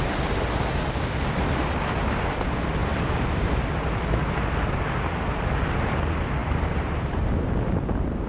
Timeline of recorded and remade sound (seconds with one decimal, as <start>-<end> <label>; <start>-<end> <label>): 0.0-2.8 recorded; 2.8-3.5 remade; 3.5-6.4 recorded; 6.4-7.5 remade; 7.5-8.3 recorded